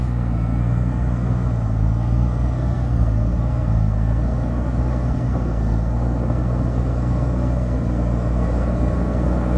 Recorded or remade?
remade